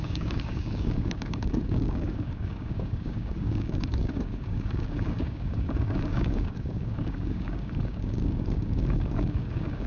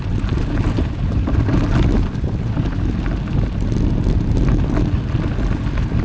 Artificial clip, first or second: first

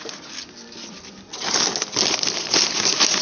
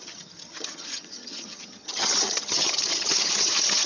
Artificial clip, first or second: second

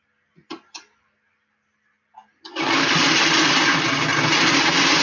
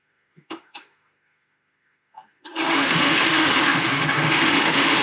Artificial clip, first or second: second